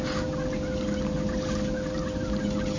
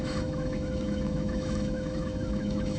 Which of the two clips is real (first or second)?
first